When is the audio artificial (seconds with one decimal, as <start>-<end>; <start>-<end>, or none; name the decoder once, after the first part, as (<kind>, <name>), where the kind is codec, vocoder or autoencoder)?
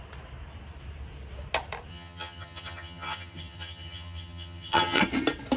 1.9-5.0 (vocoder, HiFi-GAN)